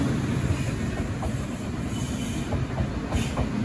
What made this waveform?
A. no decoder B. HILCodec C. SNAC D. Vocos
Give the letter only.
A